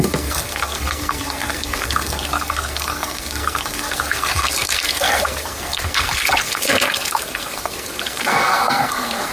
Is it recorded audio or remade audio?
remade